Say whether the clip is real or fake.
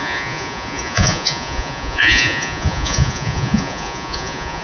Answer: fake